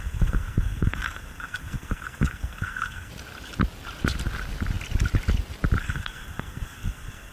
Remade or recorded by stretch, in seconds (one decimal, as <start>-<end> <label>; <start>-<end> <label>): 0.0-3.1 remade; 3.1-5.8 recorded; 5.8-7.3 remade